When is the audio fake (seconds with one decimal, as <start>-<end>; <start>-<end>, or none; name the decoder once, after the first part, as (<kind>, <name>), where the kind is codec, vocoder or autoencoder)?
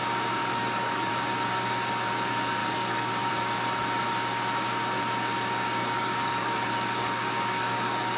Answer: 0.4-1.1 (codec, DAC); 2.6-3.3; 5.8-8.2